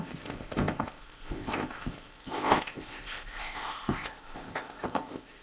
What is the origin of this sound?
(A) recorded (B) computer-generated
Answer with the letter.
B